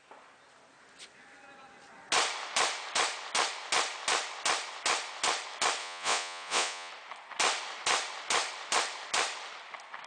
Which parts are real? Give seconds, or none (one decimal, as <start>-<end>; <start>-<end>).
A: 0.0-5.8; 6.9-10.1